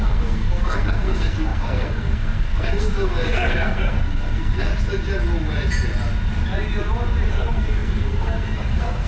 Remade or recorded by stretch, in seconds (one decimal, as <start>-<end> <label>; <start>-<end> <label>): 0.0-4.7 remade; 4.7-7.3 recorded; 7.3-9.1 remade